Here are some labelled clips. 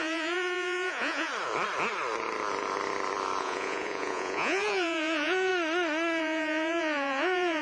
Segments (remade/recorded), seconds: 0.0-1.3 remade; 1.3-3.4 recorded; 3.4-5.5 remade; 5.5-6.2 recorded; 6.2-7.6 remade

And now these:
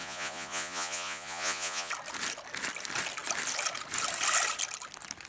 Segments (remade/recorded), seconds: 0.0-1.9 remade; 1.9-5.3 recorded

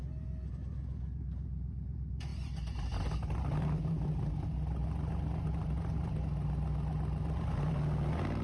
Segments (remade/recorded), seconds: 0.0-8.4 recorded

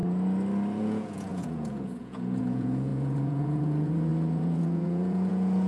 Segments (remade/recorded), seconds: 0.0-0.8 recorded; 0.8-5.7 remade

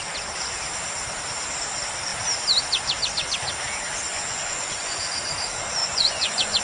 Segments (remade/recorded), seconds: 0.0-4.1 recorded; 4.1-5.0 remade; 5.0-5.8 recorded; 5.8-6.6 remade

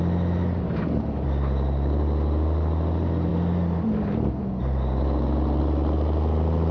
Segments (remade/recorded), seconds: 0.0-6.7 recorded